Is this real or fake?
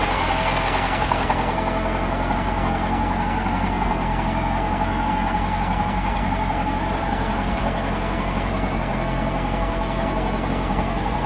fake